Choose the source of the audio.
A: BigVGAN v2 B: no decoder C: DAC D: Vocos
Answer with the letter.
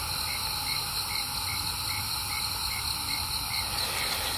B